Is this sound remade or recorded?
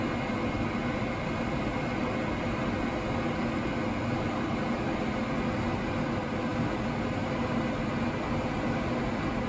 recorded